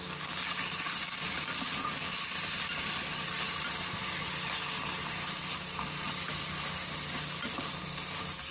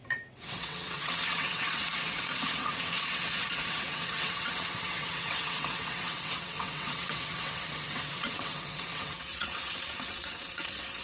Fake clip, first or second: second